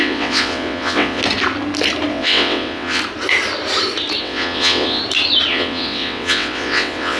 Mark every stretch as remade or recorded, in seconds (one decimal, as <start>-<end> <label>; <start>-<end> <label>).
0.0-1.2 remade; 1.2-2.1 recorded; 2.1-3.0 remade; 3.0-4.2 recorded; 4.2-5.0 remade; 5.0-5.5 recorded; 5.5-7.2 remade